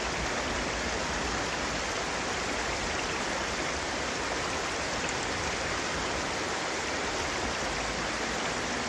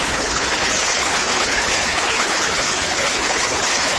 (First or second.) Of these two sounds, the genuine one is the first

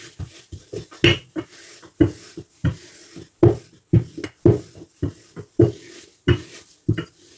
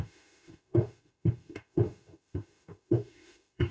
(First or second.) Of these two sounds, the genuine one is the first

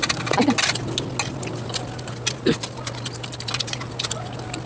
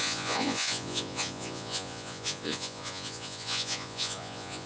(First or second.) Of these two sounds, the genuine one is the first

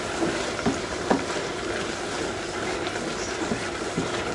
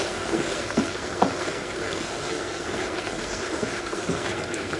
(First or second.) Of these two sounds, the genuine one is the first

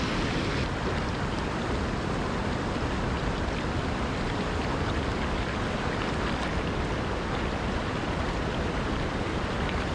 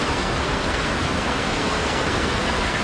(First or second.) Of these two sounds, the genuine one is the first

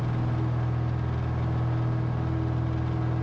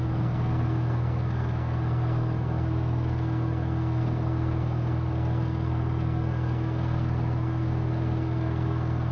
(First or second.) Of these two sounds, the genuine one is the first